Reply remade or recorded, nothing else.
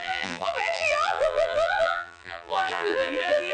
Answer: remade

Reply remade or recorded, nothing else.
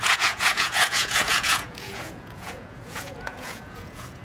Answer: remade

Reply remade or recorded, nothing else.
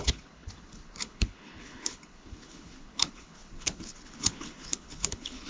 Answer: remade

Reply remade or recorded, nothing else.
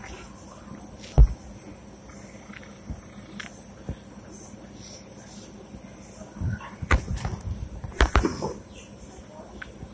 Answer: recorded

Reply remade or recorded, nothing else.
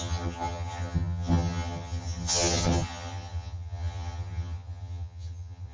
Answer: remade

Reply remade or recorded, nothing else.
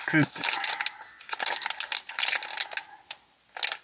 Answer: recorded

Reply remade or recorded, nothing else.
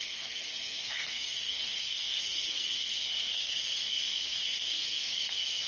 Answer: remade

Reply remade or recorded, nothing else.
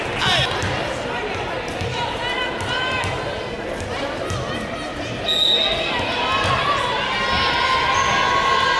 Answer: recorded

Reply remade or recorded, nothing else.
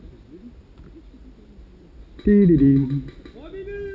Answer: recorded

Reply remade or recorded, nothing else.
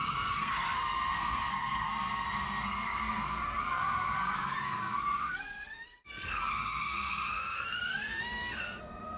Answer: remade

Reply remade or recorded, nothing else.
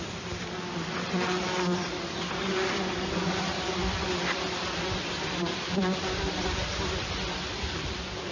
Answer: recorded